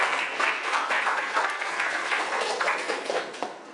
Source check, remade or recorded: remade